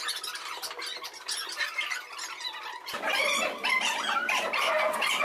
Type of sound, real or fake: fake